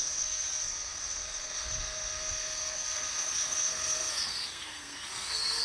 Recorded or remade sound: remade